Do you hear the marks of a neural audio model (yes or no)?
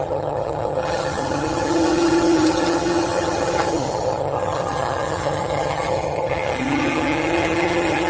yes